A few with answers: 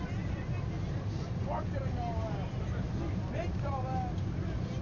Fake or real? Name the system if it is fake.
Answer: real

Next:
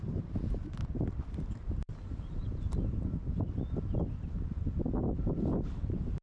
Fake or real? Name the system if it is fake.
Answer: real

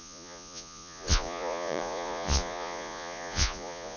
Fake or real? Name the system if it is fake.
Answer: fake, vocoder, Vocos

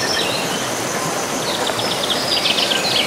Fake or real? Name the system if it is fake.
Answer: real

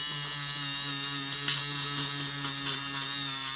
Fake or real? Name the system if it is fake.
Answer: real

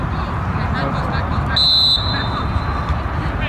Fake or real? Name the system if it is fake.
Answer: real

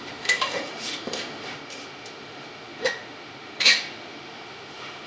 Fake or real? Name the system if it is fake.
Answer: fake, autoencoder, DAC-VAE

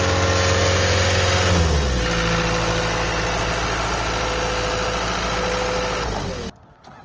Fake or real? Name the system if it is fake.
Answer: real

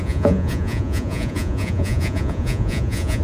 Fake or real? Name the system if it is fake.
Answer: fake, vocoder, Vocos